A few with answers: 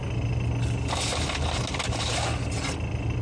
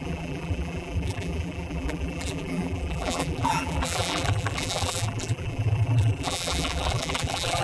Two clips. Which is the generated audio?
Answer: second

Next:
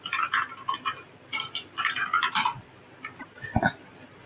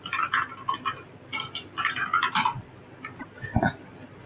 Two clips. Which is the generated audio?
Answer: first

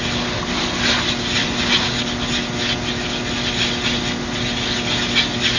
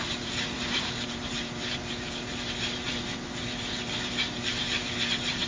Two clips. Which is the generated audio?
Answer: second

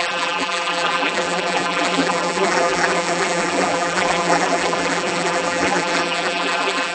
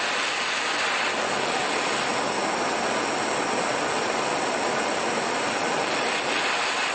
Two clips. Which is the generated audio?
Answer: first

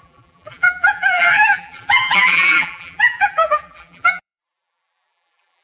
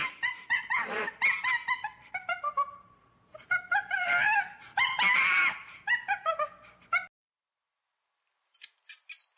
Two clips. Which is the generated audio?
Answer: first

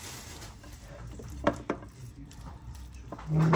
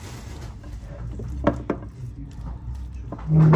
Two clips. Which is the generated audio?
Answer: first